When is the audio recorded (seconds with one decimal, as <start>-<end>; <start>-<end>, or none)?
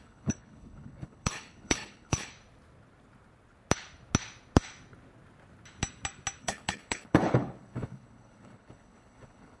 2.3-6.4